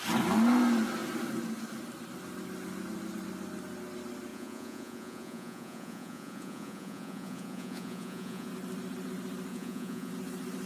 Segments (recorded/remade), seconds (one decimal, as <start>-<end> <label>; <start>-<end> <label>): 0.0-4.3 recorded; 4.3-8.5 remade; 8.5-9.5 recorded; 9.5-10.1 remade; 10.1-10.7 recorded